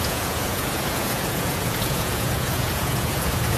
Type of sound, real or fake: fake